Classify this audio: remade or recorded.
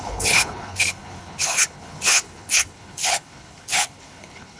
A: remade